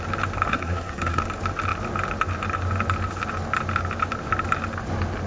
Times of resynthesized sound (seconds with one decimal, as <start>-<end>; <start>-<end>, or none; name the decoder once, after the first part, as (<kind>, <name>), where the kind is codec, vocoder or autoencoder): 0.5-1.2 (codec, SNAC)